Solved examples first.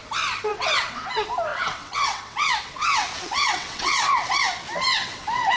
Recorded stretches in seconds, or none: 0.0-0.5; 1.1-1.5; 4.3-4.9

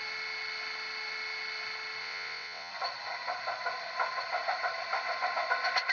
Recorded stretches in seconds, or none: 0.0-2.0; 2.7-5.9

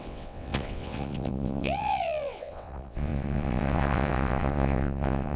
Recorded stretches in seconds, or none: none

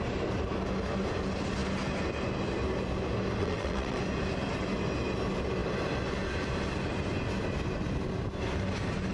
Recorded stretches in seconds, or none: 0.0-3.4; 4.0-9.1

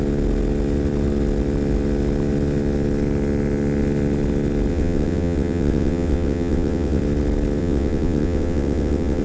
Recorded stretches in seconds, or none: 0.0-4.7; 7.0-7.6